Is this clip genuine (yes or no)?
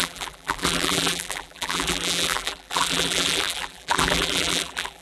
no